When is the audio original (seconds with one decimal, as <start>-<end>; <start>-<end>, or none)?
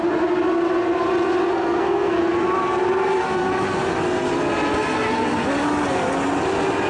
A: 0.0-1.5; 2.2-6.9